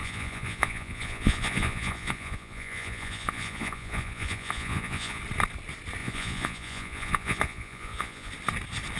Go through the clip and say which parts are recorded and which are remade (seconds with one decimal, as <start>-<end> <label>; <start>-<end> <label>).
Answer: 0.0-5.2 remade; 5.2-6.0 recorded; 6.0-8.3 remade; 8.3-9.0 recorded